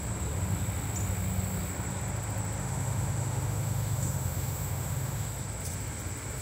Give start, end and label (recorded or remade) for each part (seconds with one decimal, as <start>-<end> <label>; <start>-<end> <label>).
0.0-2.6 recorded; 2.6-5.3 remade; 5.3-6.4 recorded